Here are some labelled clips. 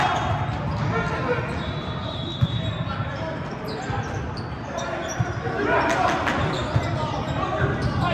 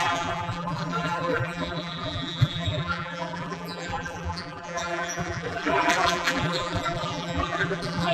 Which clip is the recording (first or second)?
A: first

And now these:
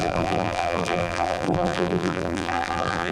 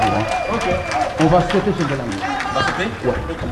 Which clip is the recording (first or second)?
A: second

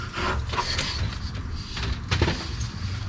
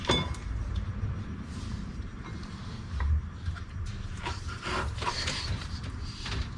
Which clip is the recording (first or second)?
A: first